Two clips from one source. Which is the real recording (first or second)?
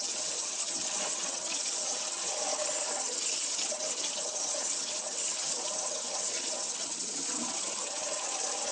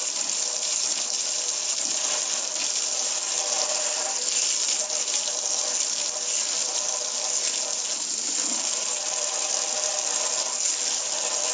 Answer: second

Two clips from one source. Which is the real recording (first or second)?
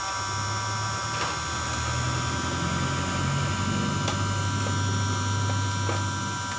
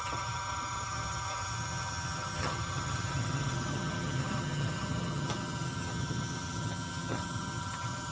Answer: first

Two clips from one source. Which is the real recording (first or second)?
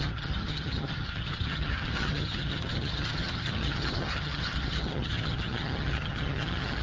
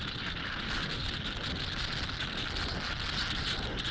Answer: second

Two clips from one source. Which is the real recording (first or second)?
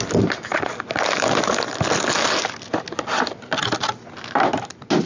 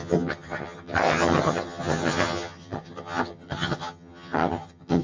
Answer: first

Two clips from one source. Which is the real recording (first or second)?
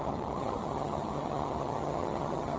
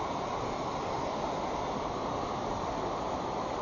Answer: second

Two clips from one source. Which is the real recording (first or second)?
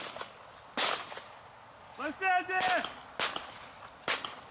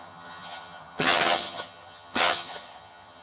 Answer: first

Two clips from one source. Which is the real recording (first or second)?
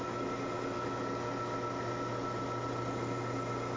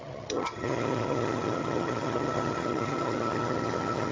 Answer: first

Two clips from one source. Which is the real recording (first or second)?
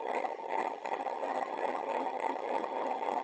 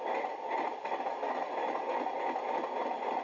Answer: second